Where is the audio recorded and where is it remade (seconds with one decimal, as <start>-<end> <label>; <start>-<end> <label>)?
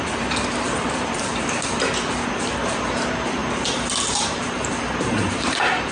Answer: 0.0-3.4 remade; 3.4-4.0 recorded; 4.0-5.9 remade